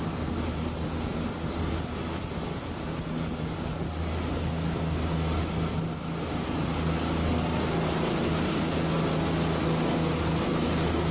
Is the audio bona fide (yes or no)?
yes